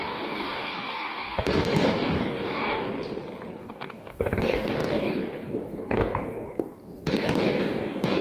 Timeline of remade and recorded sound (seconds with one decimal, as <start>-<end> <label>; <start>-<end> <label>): 0.0-2.9 remade; 2.9-3.6 recorded; 3.6-8.2 remade